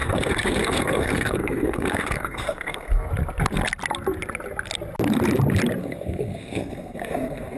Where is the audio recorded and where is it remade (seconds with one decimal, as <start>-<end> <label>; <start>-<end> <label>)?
0.0-3.1 remade; 3.1-5.8 recorded; 5.8-7.6 remade